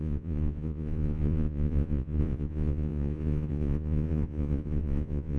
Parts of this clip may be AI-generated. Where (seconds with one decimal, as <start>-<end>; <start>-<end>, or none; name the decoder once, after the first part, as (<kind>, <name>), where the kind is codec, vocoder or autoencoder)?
0.0-5.4 (vocoder, Vocos)